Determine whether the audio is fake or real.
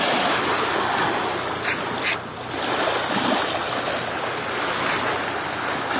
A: real